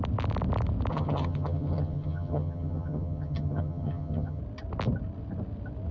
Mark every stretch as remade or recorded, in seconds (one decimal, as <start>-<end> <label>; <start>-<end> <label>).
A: 0.0-0.9 recorded; 0.9-4.4 remade; 4.4-5.9 recorded